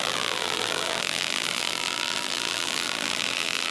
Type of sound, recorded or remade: remade